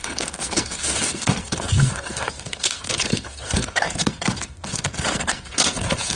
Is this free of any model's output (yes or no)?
no